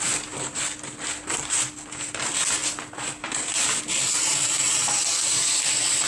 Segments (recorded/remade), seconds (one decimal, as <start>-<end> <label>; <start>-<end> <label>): 0.0-2.6 remade; 2.6-5.1 recorded; 5.1-6.1 remade